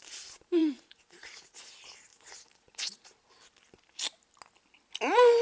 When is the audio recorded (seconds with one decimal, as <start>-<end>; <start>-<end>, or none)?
0.0-0.6; 1.6-2.1; 3.2-5.4